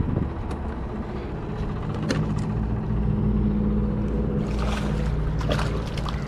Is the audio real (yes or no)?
yes